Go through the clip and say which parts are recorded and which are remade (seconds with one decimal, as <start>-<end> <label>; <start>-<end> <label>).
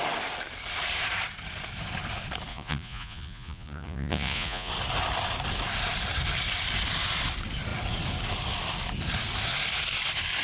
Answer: 0.0-2.5 recorded; 2.5-4.7 remade; 4.7-10.4 recorded